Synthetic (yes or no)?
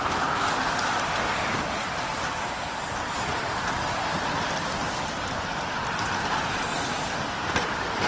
yes